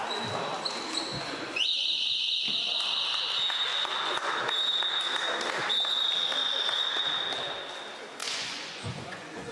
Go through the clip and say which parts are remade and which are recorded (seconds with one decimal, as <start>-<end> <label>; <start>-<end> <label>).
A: 0.0-1.1 recorded; 1.1-1.8 remade; 1.8-3.7 recorded; 3.7-4.3 remade; 4.3-8.2 recorded; 8.2-9.5 remade